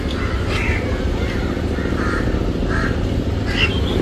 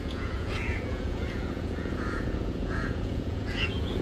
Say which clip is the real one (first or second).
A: first